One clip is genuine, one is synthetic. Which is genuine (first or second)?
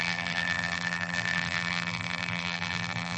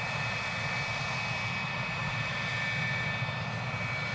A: second